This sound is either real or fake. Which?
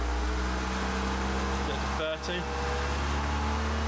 real